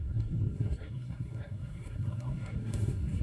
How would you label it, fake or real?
fake